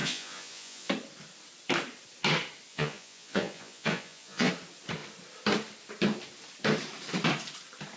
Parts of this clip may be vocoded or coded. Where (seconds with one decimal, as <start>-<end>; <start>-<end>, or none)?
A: 0.0-0.9; 2.7-4.5